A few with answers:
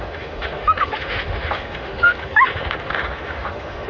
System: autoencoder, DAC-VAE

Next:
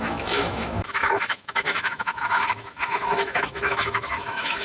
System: autoencoder, DAC-VAE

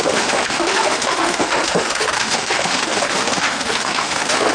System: autoencoder, DAC-VAE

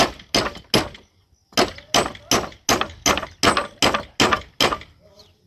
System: none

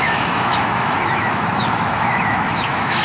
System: autoencoder, DAC-VAE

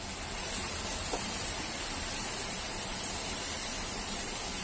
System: none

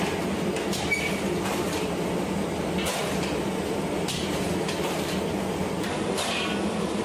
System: none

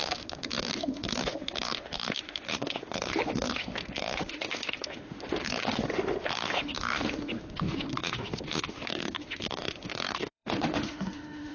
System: autoencoder, DAC-VAE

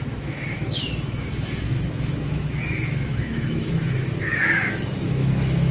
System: autoencoder, DAC-VAE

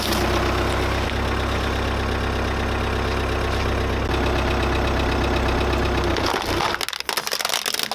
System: none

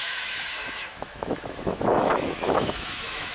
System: autoencoder, DAC-VAE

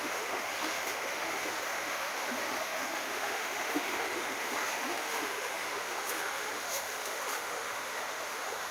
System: autoencoder, DAC-VAE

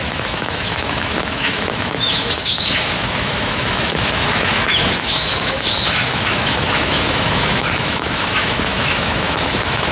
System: autoencoder, DAC-VAE